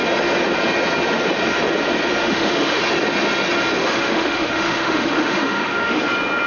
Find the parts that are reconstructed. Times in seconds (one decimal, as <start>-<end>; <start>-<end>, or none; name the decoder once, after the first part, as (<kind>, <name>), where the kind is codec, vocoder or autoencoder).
2.2-2.8 (autoencoder, DAC-VAE); 3.8-6.0